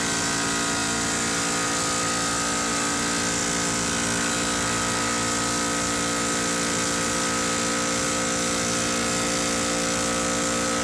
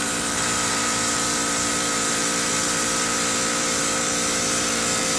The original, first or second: first